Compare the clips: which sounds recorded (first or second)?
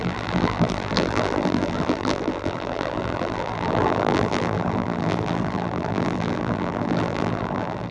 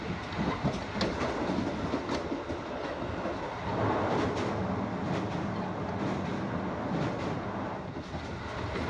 second